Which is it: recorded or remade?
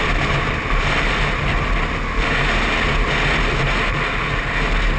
recorded